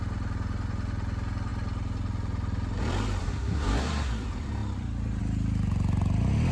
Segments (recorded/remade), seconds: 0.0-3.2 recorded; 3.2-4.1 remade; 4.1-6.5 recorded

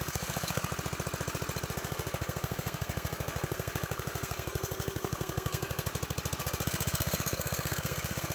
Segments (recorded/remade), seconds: 0.0-0.7 remade; 0.7-1.7 recorded; 1.7-5.9 remade; 5.9-6.4 recorded; 6.4-8.3 remade

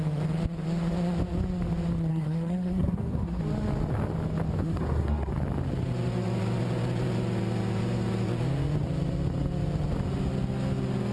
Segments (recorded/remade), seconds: 0.0-2.1 recorded; 2.1-3.4 remade; 3.4-4.6 recorded; 4.6-5.3 remade; 5.3-11.1 recorded

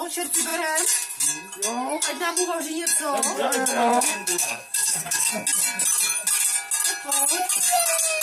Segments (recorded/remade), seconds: 0.0-3.9 recorded; 3.9-5.3 remade; 5.3-8.2 recorded

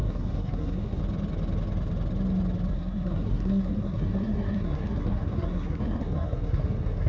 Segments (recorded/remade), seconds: 0.0-1.0 remade; 1.0-2.7 recorded; 2.7-7.1 remade

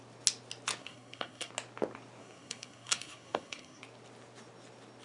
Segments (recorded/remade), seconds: 0.0-0.8 recorded; 0.8-1.5 remade; 1.5-2.2 recorded; 2.2-3.8 remade; 3.8-5.0 recorded

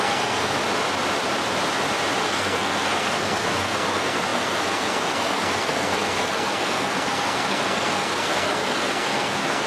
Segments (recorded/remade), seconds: 0.0-0.6 remade; 0.6-2.2 recorded; 2.2-9.7 remade